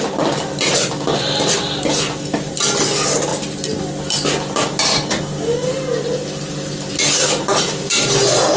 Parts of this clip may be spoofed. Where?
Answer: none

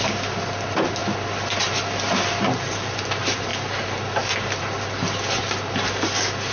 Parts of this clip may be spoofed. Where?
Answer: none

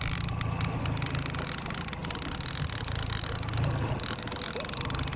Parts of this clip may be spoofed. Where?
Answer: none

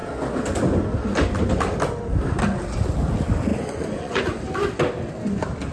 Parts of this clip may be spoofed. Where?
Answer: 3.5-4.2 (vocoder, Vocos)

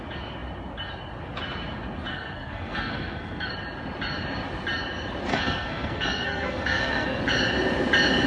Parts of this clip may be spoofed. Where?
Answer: 2.1-3.5 (codec, SNAC); 5.3-7.2